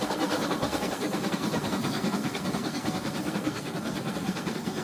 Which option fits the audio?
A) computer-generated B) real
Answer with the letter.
A